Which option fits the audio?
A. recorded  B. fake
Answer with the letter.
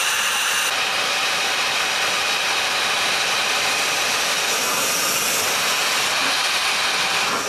A